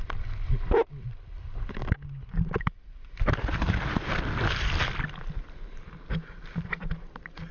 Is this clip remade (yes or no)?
no